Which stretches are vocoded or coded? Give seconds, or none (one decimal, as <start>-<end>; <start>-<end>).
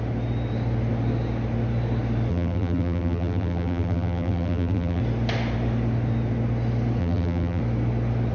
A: 2.3-5.0; 7.0-7.6